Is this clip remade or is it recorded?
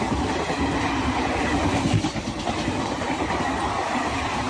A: recorded